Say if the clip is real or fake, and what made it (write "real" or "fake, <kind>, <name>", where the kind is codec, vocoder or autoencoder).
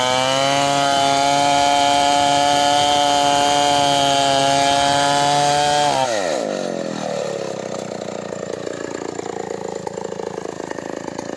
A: real